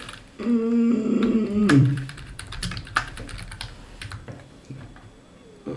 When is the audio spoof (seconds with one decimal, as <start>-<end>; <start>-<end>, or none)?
1.6-4.8

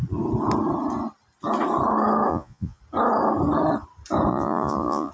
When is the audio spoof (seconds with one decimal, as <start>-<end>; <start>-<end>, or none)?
2.3-2.8; 4.3-5.1

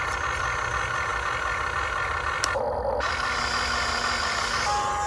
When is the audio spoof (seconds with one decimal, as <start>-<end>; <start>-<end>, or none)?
none

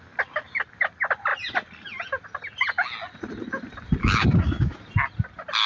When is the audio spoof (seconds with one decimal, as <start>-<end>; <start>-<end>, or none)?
4.0-4.8

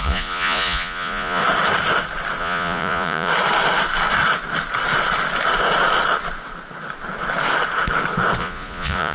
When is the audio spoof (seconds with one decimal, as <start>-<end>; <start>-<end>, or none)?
0.0-1.4; 2.4-3.3; 8.4-9.1

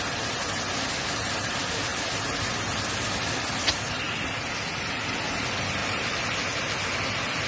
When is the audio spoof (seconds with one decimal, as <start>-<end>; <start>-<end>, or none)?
5.8-6.8

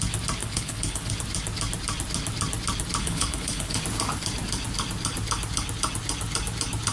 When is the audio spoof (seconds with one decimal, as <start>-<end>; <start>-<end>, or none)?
0.4-1.1; 3.0-3.8